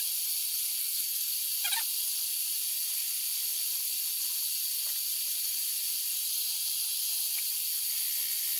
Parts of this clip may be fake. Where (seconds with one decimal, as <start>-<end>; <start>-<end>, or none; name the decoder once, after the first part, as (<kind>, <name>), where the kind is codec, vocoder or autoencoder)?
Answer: 0.8-1.3 (codec, SNAC)